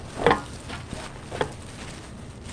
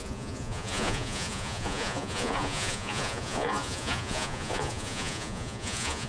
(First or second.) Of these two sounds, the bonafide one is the first